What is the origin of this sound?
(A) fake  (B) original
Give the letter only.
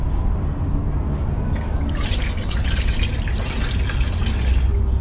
B